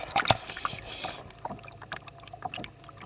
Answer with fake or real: real